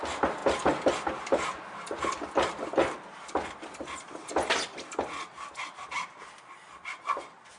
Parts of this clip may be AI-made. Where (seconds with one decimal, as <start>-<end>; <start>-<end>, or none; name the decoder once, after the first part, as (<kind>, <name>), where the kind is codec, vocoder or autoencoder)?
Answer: none